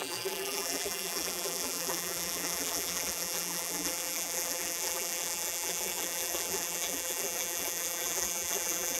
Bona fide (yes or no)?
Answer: no